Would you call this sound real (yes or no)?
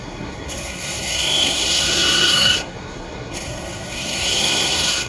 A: no